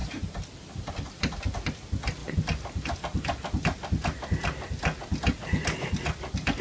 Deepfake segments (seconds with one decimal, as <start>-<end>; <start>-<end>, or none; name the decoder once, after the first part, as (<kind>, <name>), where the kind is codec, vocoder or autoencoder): none